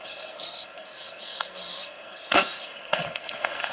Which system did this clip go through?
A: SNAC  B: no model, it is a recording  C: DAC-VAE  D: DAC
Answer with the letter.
A